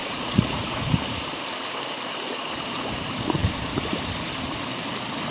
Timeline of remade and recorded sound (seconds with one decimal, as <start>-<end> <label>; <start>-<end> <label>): 0.0-0.8 remade; 0.8-5.3 recorded